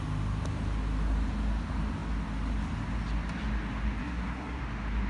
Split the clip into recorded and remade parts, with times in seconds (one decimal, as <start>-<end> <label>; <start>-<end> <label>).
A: 0.0-4.0 recorded; 4.0-4.6 remade; 4.6-5.1 recorded

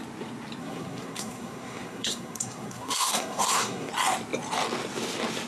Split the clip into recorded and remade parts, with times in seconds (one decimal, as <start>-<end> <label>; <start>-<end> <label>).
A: 0.0-0.6 recorded; 0.6-3.9 remade; 3.9-5.5 recorded

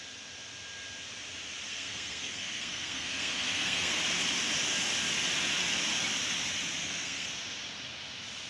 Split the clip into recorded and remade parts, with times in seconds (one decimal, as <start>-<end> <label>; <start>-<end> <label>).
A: 0.0-1.7 recorded; 1.7-4.0 remade; 4.0-6.8 recorded; 6.8-7.3 remade; 7.3-8.5 recorded

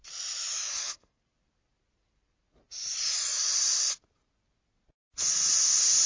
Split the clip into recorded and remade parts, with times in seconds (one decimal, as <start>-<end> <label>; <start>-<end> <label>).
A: 0.0-0.7 recorded; 0.7-1.2 remade; 1.2-6.1 recorded

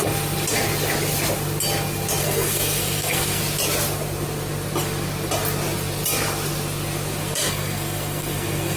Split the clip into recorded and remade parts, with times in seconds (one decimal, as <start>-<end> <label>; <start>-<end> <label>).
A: 0.0-2.2 recorded; 2.2-3.4 remade; 3.4-7.2 recorded; 7.2-8.8 remade